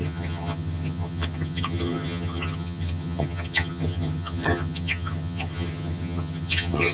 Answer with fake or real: fake